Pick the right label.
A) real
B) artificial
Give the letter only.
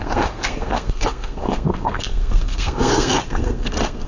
B